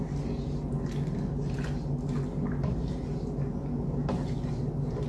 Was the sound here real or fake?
real